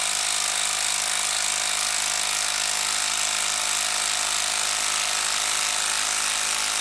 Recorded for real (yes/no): yes